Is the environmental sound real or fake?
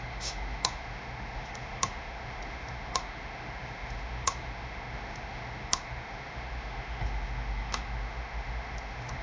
fake